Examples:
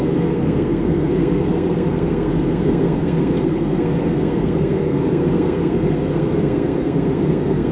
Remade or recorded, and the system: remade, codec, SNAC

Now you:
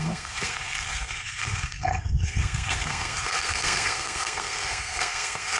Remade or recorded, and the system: remade, codec, SNAC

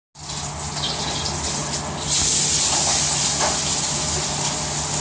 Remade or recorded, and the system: recorded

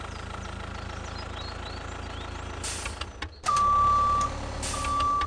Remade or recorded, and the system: recorded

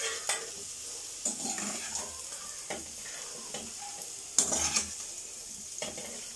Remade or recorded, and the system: recorded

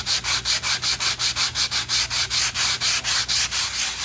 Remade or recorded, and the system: recorded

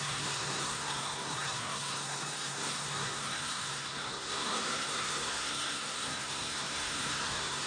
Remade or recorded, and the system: remade, codec, SNAC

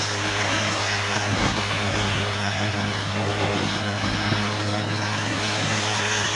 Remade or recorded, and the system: remade, codec, SNAC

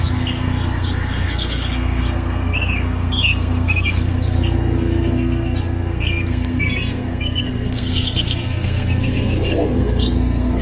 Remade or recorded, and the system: remade, codec, SNAC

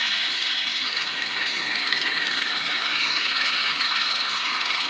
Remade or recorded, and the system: remade, codec, SNAC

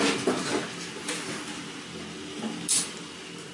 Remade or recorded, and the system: recorded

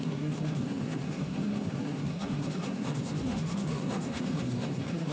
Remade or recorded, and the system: remade, codec, SNAC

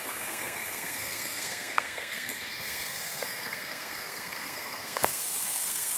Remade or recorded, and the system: remade, codec, SNAC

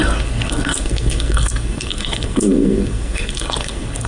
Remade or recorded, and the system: remade, codec, SNAC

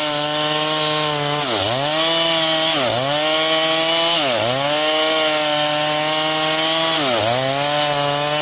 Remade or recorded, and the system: recorded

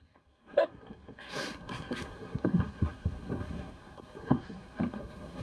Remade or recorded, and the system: remade, codec, SNAC